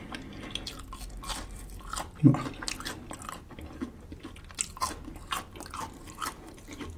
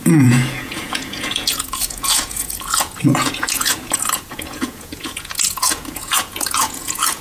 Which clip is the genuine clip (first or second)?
first